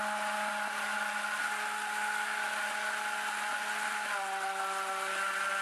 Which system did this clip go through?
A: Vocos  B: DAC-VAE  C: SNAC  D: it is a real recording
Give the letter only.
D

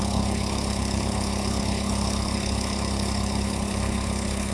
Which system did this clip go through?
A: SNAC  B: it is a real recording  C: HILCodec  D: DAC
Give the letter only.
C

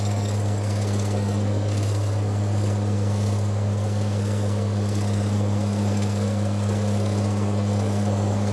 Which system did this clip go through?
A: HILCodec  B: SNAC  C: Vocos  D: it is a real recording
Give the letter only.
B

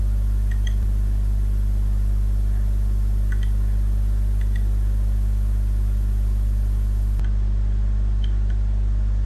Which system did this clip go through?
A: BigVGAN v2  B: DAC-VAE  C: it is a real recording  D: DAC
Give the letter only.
C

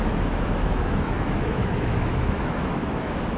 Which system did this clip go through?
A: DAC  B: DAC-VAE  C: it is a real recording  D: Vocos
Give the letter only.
B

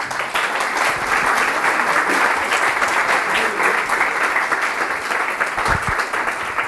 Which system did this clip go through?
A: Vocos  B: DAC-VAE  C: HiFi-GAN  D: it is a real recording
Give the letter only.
D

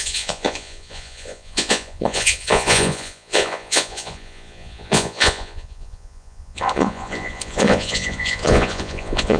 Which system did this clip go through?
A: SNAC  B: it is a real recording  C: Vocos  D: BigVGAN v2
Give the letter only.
C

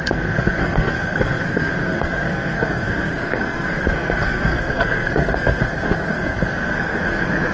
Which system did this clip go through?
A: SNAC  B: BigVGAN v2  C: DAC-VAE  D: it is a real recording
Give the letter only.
A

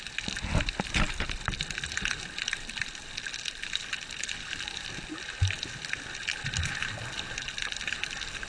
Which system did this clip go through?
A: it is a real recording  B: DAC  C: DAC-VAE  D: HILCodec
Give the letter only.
A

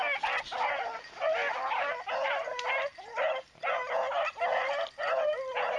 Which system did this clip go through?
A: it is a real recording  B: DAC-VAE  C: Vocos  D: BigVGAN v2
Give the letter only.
A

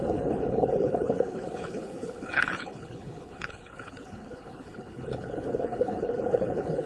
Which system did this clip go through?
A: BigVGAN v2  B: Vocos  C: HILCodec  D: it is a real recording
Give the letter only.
C